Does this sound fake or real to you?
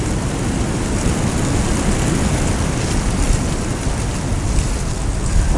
real